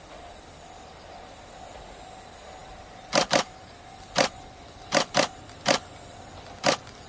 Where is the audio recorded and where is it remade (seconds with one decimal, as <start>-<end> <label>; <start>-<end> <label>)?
0.0-2.6 recorded; 2.6-7.1 remade

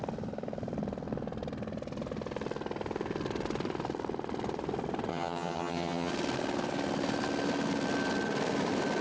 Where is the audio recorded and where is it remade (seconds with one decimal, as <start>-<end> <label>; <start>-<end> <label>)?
0.0-5.1 recorded; 5.1-6.1 remade; 6.1-9.0 recorded

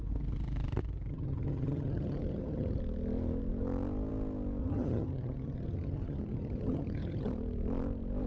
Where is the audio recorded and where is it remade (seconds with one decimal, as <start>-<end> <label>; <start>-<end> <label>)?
0.0-1.1 recorded; 1.1-2.8 remade; 2.8-4.6 recorded; 4.6-7.3 remade; 7.3-8.3 recorded

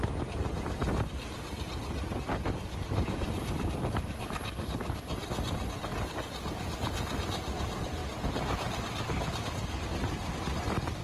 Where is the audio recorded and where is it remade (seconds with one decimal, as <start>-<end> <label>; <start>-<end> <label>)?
0.0-11.0 recorded

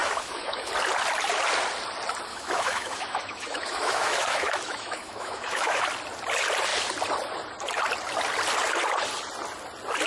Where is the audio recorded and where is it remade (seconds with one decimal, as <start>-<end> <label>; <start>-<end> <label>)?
0.0-0.7 remade; 0.7-2.3 recorded; 2.3-5.8 remade; 5.8-10.1 recorded

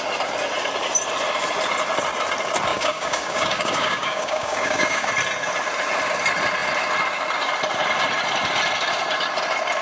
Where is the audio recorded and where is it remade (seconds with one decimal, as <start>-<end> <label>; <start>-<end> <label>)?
0.0-2.7 recorded; 2.7-5.1 remade; 5.1-9.8 recorded

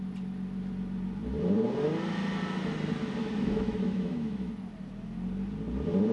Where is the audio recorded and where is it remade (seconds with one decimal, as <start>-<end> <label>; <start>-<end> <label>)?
0.0-3.2 recorded; 3.2-4.5 remade; 4.5-6.1 recorded